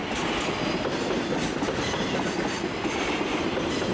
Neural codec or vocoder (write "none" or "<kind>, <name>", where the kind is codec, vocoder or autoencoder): none